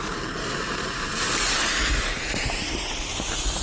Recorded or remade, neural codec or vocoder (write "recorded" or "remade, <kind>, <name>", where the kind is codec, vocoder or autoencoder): remade, vocoder, BigVGAN v2